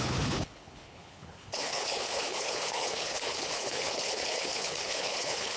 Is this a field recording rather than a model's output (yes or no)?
no